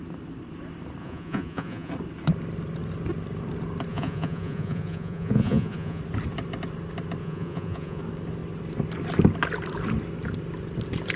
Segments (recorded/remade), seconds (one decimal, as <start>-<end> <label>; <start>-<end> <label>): 0.0-1.0 recorded; 1.0-1.9 remade; 1.9-3.9 recorded; 3.9-6.0 remade; 6.0-7.2 recorded; 7.2-8.0 remade; 8.0-11.2 recorded